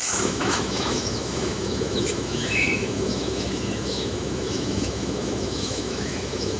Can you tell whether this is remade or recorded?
remade